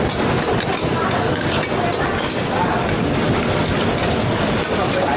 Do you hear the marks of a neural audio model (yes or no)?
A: no